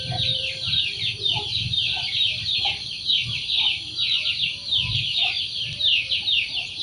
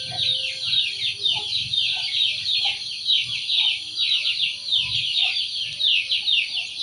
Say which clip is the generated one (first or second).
first